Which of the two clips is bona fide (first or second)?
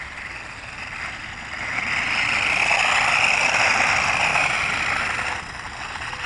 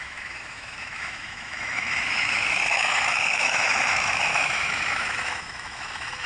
first